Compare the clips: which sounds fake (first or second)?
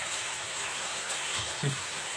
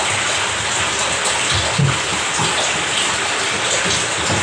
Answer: first